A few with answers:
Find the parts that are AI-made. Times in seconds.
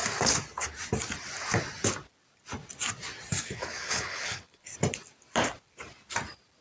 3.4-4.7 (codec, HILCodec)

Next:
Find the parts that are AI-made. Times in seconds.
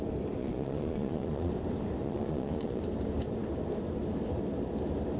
0.4-1.5 (vocoder, Vocos); 2.0-2.8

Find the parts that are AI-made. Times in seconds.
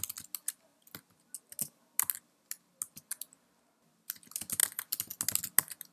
none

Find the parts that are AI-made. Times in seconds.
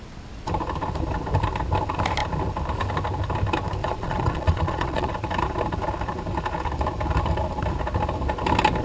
3.8-5.1 (vocoder, Vocos)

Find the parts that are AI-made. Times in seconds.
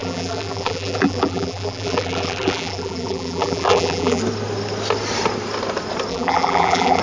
0.0-4.2 (vocoder, BigVGAN v2); 6.1-7.0